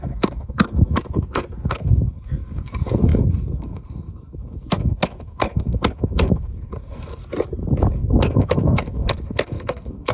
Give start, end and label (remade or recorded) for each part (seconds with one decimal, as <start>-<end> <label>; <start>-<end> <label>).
0.0-7.2 remade; 7.2-7.9 recorded; 7.9-10.1 remade